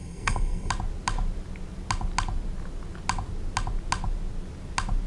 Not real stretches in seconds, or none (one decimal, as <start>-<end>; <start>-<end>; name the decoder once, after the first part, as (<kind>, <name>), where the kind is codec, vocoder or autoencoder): 0.0-0.7 (codec, SNAC)